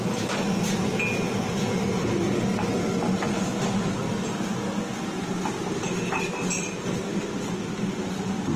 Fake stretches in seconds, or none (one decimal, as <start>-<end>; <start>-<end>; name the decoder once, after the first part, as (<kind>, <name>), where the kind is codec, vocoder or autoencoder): none